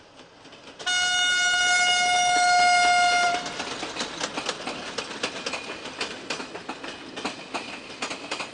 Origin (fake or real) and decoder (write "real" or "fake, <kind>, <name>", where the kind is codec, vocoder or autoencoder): real